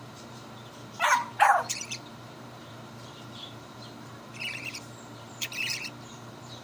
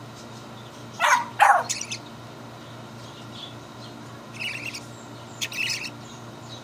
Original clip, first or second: second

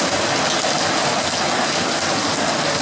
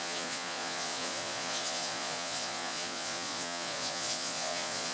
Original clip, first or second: first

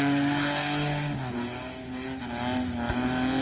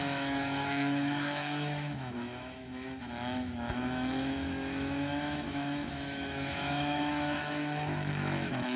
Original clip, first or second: first